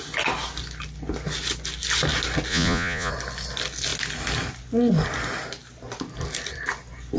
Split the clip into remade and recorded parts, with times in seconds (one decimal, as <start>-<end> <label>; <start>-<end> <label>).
0.0-2.5 recorded; 2.5-3.1 remade; 3.1-7.2 recorded